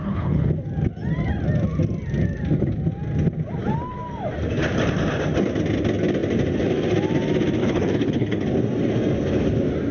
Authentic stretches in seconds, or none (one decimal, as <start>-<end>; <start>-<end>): 0.5-7.6; 8.4-9.9